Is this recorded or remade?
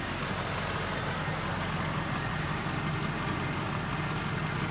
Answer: recorded